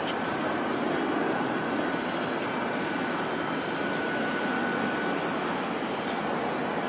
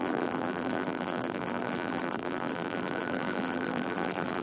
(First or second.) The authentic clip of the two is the first